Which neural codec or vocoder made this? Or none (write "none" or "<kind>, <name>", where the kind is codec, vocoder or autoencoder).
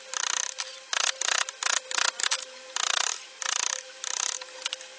none